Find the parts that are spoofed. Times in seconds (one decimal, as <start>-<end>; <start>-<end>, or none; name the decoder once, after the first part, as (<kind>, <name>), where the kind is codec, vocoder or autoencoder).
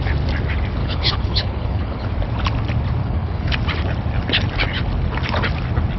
0.8-2.1 (codec, HILCodec); 3.0-3.5